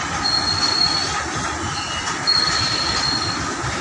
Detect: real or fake real